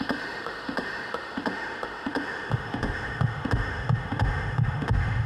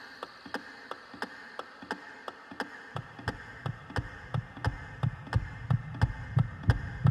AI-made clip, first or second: first